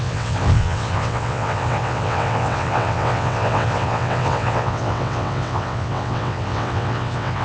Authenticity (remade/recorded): remade